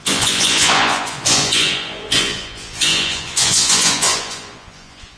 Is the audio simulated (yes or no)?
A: yes